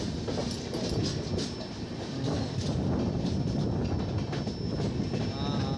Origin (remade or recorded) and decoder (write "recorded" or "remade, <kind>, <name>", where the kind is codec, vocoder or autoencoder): recorded